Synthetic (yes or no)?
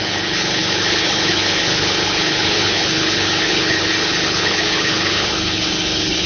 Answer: yes